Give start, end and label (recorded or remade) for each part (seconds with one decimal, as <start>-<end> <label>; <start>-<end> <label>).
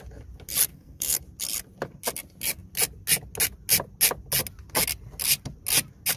0.0-0.7 recorded; 0.7-1.2 remade; 1.2-6.2 recorded